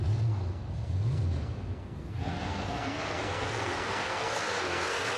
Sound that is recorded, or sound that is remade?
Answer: remade